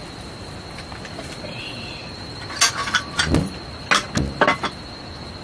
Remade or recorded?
recorded